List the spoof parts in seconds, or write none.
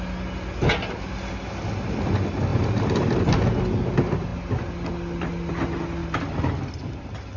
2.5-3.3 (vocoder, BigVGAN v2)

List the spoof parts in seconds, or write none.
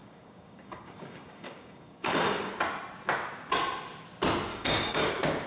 0.0-2.5 (codec, DAC); 4.5-5.1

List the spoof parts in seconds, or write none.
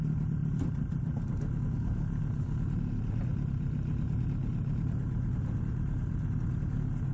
none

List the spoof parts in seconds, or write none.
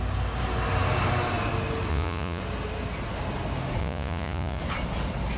1.9-2.4 (vocoder, Vocos); 3.8-4.6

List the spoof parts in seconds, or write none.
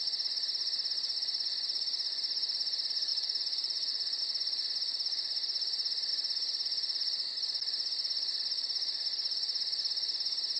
3.1-4.2 (vocoder, Vocos)